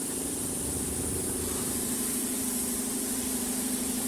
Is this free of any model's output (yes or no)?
no